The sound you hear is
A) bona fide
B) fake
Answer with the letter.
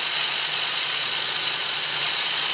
B